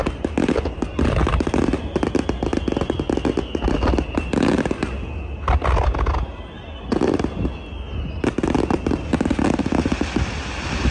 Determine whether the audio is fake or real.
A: real